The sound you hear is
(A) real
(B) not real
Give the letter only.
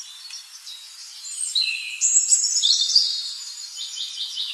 B